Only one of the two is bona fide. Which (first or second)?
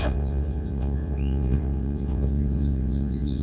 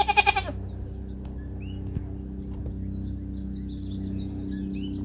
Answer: second